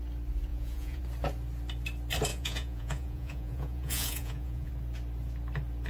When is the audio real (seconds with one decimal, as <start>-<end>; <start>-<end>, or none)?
0.0-0.5; 1.0-2.3; 4.7-5.9